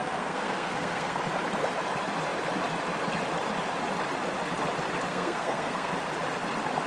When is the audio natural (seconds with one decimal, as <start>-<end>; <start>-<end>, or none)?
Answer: 1.2-5.1; 5.9-6.9